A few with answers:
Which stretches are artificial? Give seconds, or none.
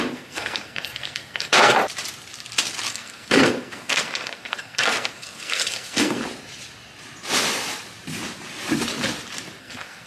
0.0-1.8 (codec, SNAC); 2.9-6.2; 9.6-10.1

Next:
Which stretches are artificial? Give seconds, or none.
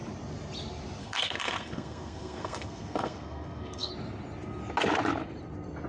1.0-3.9 (codec, SNAC)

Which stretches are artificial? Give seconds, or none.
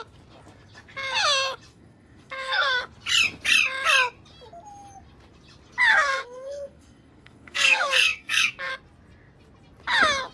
1.7-2.8 (codec, SNAC); 5.9-8.7